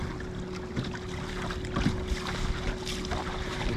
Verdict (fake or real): real